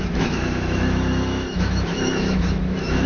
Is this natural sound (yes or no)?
no